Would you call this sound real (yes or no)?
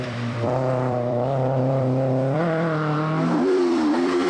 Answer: no